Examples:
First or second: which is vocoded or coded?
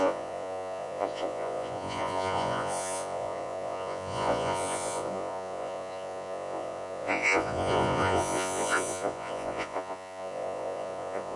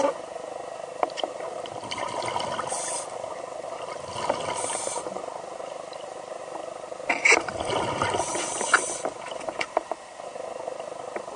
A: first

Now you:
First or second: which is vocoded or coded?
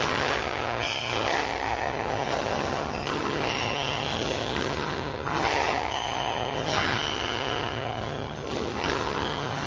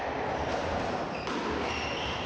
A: first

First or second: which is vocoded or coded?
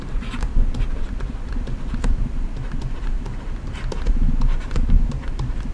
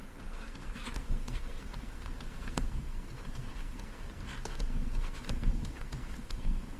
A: second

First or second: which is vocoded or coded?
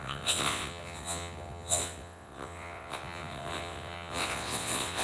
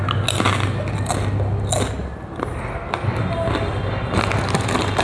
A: first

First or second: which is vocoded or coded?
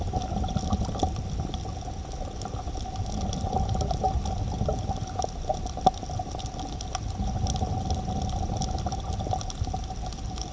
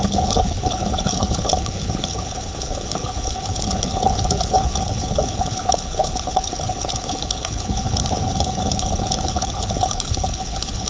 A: second